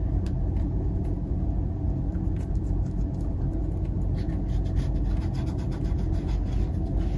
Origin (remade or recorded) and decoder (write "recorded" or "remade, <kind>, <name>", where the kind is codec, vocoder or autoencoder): recorded